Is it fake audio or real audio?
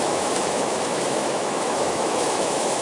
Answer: fake